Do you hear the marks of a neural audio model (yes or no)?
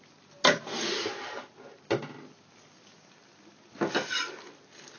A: no